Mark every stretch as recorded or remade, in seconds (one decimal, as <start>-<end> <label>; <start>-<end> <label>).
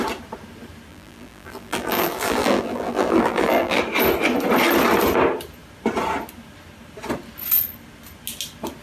0.0-0.9 recorded; 0.9-3.8 remade; 3.8-8.8 recorded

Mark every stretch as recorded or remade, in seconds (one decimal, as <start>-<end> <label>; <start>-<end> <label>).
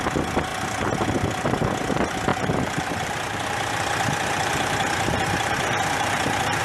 0.0-2.3 recorded; 2.3-6.6 remade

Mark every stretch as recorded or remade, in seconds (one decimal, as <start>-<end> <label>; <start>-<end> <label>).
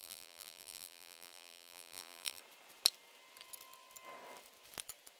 0.0-2.4 remade; 2.4-5.2 recorded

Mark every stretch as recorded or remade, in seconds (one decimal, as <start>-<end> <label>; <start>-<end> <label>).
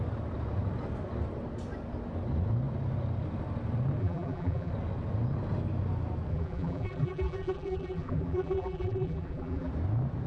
0.0-4.0 recorded; 4.0-4.7 remade; 4.7-6.3 recorded; 6.3-9.7 remade; 9.7-10.3 recorded